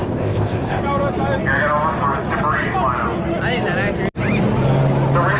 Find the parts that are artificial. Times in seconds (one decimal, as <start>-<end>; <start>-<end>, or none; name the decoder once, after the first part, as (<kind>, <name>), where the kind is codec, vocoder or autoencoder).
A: 0.0-0.8 (codec, ZipCodec)